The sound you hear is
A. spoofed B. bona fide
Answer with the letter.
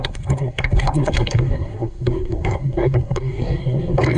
A